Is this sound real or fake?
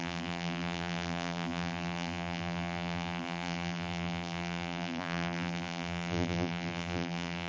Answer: fake